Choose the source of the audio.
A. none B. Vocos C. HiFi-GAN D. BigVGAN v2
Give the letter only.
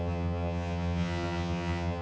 C